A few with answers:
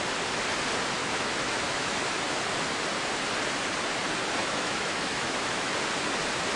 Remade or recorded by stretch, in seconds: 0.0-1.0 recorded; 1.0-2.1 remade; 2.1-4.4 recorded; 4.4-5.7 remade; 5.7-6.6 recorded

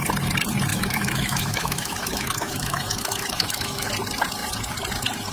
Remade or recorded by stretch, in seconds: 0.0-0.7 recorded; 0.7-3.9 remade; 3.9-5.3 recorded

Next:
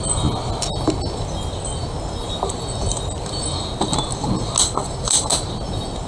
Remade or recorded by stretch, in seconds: 0.0-6.1 recorded